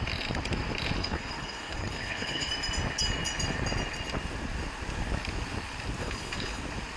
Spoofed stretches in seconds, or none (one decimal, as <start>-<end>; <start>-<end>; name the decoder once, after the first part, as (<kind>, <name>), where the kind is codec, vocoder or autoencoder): 1.0-2.5 (codec, HILCodec); 6.0-6.6